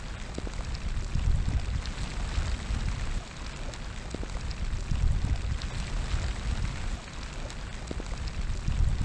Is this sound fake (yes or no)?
no